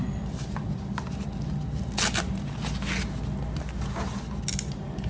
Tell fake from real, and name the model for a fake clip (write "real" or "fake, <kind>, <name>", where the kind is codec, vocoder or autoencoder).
real